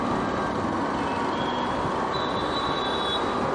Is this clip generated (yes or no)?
no